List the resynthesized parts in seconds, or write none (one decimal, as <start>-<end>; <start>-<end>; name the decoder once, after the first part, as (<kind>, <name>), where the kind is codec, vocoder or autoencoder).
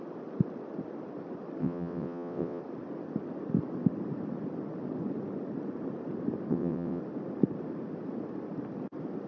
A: 1.6-2.6 (vocoder, WaveNeXt); 6.5-7.0